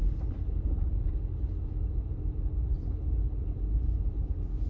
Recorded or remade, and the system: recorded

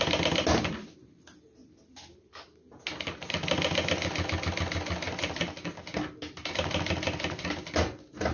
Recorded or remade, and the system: recorded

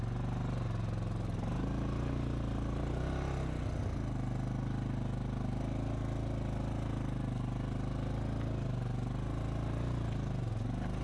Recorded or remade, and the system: recorded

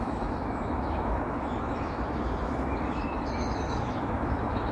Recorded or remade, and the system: remade, autoencoder, DAC-VAE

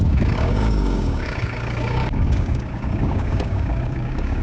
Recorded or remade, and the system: remade, codec, DAC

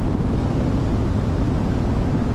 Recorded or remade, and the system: recorded